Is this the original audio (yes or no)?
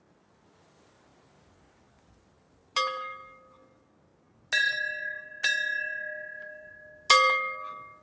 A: yes